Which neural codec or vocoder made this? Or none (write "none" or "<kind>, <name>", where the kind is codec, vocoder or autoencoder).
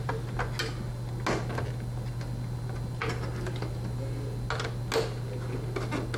none